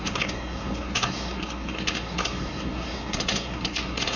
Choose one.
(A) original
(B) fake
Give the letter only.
B